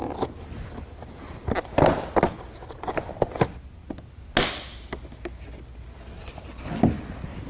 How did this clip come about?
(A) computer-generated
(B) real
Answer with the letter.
B